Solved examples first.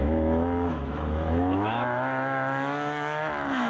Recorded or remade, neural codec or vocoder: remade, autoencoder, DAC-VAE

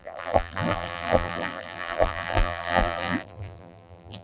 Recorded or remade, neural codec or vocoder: remade, vocoder, BigVGAN v2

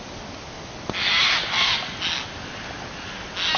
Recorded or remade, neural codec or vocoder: recorded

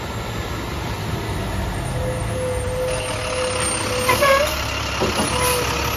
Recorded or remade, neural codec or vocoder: recorded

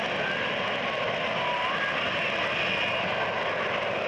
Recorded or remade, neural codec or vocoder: recorded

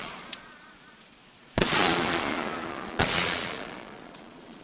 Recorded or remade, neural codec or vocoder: remade, vocoder, Vocos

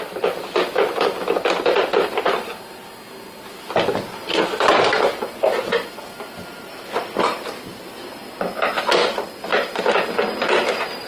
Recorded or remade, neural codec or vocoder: recorded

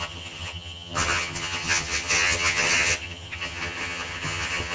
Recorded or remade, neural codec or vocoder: remade, vocoder, HiFi-GAN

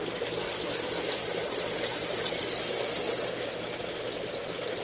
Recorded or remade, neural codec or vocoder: recorded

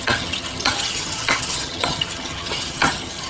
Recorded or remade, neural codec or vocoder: remade, vocoder, HiFi-GAN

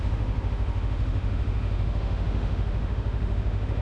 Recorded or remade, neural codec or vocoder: remade, autoencoder, DAC-VAE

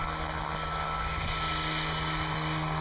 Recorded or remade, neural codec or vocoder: recorded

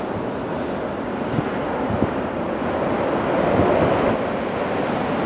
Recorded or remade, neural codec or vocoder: recorded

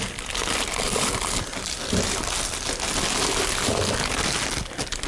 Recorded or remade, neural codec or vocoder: recorded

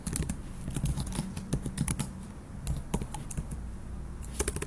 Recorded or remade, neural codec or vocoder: recorded